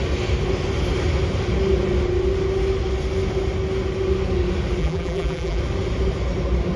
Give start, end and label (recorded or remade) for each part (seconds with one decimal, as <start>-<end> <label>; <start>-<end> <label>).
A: 0.0-4.8 recorded; 4.8-5.6 remade; 5.6-6.8 recorded